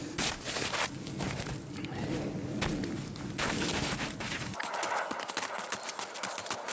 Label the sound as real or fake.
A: real